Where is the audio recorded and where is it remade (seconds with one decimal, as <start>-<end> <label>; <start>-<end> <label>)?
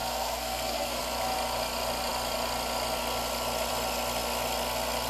0.0-1.0 remade; 1.0-5.1 recorded